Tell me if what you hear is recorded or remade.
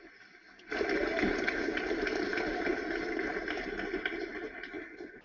recorded